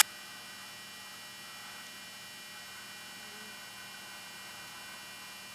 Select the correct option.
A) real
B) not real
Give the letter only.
A